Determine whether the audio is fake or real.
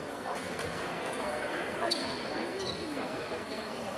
fake